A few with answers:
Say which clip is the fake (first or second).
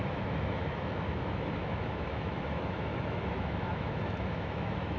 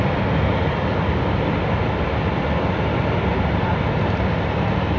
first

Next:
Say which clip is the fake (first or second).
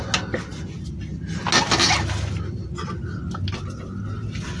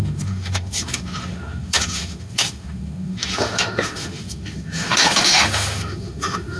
second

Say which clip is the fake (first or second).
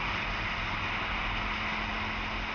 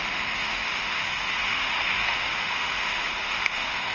second